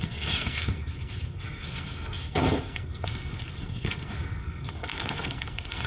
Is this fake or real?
fake